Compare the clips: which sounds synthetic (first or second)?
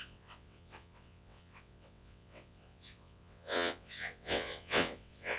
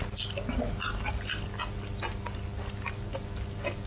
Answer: first